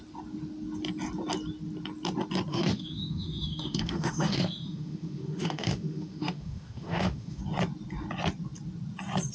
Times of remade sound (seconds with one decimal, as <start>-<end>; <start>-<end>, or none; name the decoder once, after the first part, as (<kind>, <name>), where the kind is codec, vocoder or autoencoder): 2.5-7.4 (autoencoder, DAC-VAE)